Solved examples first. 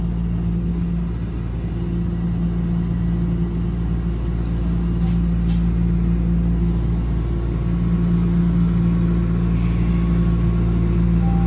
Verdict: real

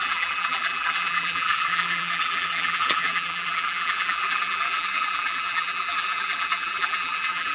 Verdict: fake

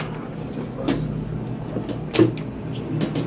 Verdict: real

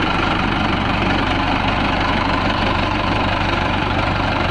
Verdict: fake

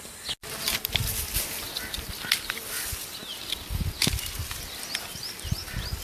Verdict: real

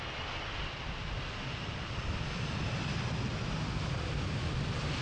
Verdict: real